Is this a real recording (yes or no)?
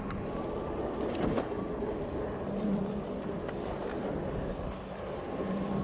yes